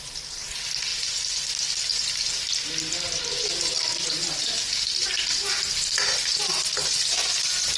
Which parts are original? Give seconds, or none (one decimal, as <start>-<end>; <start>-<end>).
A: 0.0-7.8